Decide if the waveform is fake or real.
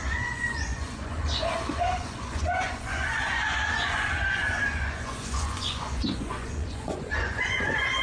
fake